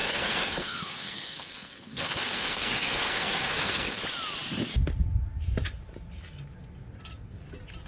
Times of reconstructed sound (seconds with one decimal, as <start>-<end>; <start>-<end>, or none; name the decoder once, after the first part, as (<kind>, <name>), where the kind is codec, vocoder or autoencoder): 0.0-4.0 (codec, SNAC)